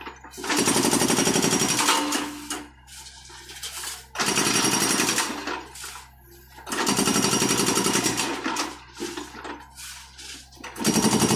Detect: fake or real real